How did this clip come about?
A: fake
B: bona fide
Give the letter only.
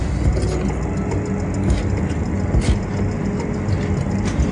B